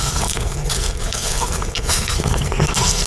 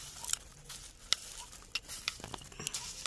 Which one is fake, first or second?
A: first